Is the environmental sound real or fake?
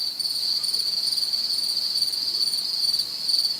real